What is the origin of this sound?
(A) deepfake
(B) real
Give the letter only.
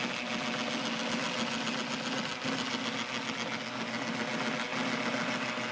B